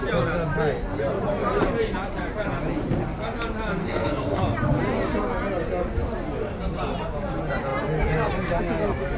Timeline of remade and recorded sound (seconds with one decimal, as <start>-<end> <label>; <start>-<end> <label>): 0.0-3.8 recorded; 3.8-4.4 remade; 4.4-9.2 recorded